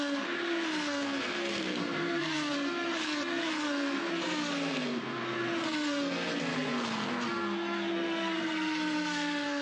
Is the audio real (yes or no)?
no